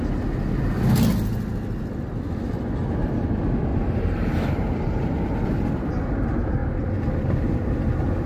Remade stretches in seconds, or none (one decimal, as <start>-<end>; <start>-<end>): 3.7-5.2